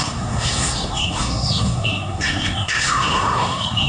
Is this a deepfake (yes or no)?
yes